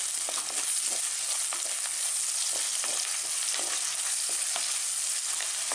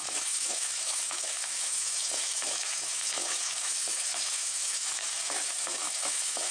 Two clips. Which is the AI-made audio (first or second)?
second